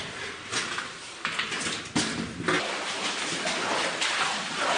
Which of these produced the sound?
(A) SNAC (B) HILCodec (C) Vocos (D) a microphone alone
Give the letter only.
D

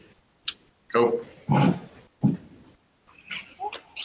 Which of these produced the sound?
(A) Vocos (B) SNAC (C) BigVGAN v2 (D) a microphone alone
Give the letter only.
D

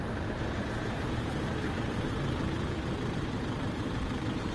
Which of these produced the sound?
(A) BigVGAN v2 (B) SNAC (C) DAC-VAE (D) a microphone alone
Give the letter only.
A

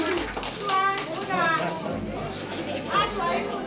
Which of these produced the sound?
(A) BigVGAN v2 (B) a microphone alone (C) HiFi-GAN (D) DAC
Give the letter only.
B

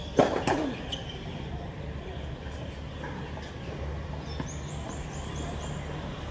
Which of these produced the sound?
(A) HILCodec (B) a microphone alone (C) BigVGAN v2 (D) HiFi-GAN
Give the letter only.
B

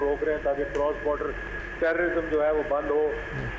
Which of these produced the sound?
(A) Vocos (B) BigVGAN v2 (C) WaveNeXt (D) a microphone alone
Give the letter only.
D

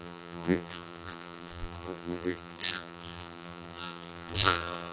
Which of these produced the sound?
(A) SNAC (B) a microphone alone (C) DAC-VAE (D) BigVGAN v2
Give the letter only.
D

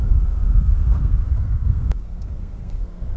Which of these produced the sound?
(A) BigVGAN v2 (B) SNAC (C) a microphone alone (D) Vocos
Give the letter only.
B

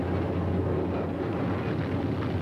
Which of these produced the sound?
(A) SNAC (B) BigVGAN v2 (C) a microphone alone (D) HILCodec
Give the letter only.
C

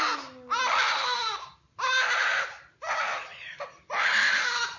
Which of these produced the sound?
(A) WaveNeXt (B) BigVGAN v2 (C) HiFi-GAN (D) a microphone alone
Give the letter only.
D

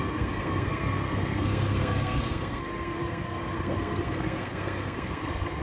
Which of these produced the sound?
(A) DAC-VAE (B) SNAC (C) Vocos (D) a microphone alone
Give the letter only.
B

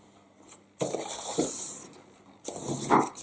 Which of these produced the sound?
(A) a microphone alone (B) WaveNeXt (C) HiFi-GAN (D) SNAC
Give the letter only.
A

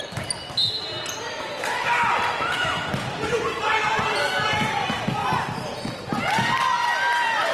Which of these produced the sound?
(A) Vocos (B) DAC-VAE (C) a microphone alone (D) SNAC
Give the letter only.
C